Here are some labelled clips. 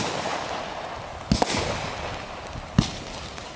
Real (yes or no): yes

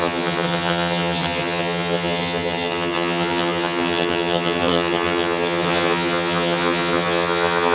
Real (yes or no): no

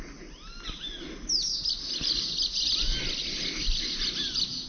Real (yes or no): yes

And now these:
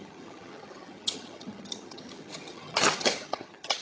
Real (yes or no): no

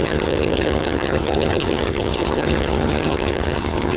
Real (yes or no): no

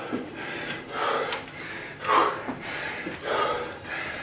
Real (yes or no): yes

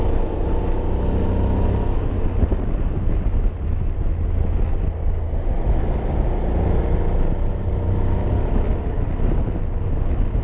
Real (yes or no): yes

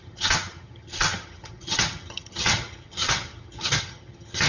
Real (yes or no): no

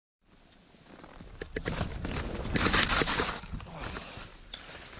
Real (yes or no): yes